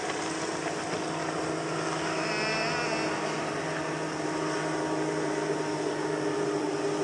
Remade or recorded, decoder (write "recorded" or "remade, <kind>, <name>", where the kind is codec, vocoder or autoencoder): recorded